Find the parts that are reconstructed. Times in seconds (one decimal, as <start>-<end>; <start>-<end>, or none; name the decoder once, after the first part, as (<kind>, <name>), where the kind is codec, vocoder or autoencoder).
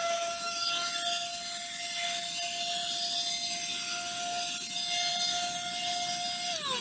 0.0-0.9 (codec, DAC)